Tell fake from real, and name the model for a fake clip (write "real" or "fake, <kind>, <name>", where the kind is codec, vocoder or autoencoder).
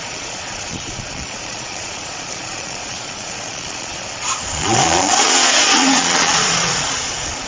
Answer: fake, vocoder, Vocos